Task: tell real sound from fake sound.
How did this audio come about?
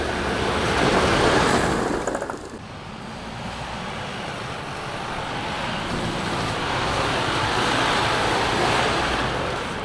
fake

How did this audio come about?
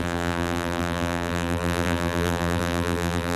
fake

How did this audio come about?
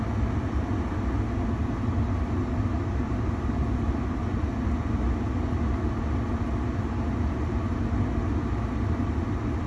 real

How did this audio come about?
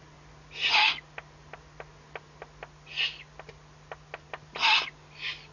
real